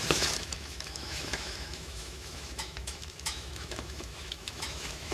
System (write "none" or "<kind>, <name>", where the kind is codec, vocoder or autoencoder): autoencoder, DAC-VAE